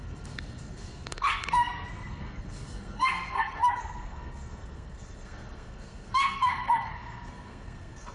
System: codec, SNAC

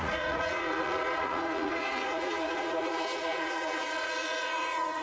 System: vocoder, Vocos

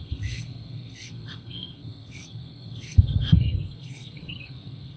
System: codec, SNAC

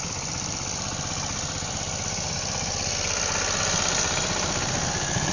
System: vocoder, BigVGAN v2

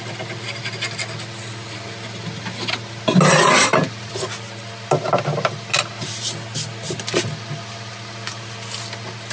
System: none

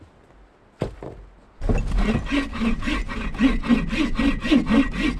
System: none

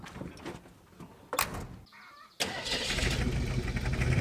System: none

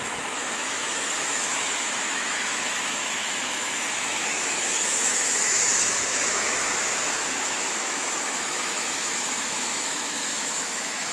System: autoencoder, DAC-VAE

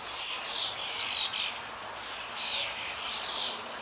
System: none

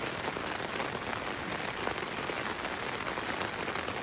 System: none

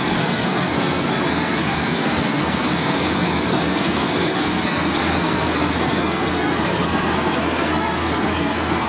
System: codec, SNAC